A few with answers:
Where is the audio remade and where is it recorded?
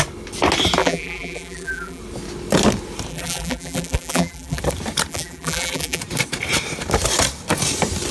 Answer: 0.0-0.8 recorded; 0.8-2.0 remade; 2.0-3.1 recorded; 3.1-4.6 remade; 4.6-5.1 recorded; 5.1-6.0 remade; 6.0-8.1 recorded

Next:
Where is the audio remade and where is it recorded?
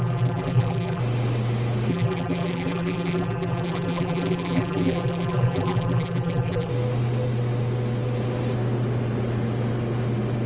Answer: 0.0-1.0 remade; 1.0-1.9 recorded; 1.9-6.7 remade; 6.7-10.5 recorded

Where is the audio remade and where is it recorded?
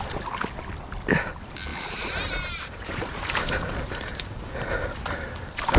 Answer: 0.0-1.7 recorded; 1.7-4.9 remade; 4.9-5.8 recorded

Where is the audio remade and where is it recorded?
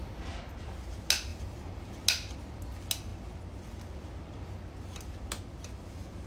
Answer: 0.0-1.3 recorded; 1.3-1.9 remade; 1.9-6.3 recorded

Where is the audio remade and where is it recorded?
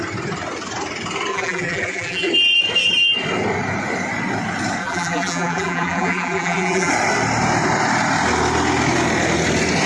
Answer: 0.0-1.3 recorded; 1.3-2.3 remade; 2.3-4.8 recorded; 4.8-6.9 remade; 6.9-9.9 recorded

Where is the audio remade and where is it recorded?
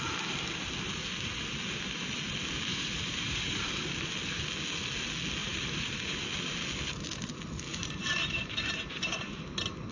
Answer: 0.0-2.7 recorded; 2.7-4.1 remade; 4.1-5.4 recorded; 5.4-6.2 remade; 6.2-7.7 recorded; 7.7-9.4 remade; 9.4-9.9 recorded